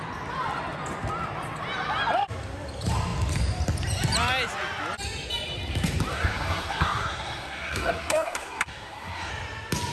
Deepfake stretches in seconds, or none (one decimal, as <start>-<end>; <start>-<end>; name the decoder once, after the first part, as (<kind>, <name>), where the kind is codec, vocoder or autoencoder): 6.1-9.3 (codec, SNAC)